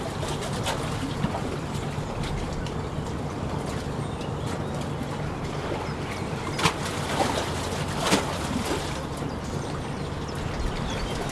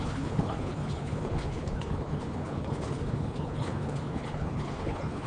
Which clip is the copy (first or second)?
second